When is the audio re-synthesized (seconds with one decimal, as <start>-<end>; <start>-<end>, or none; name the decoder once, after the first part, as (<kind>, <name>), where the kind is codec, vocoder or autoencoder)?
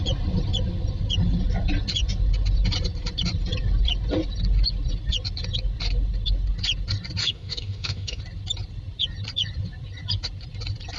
7.2-8.2 (autoencoder, DAC-VAE)